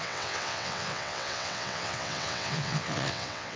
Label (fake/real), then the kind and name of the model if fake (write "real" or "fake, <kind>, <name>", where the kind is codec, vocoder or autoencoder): fake, vocoder, WaveNeXt